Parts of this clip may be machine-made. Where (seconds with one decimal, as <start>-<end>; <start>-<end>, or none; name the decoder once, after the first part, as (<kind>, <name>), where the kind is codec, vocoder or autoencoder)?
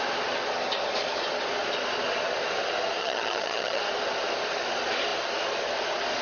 3.0-3.8 (vocoder, HiFi-GAN)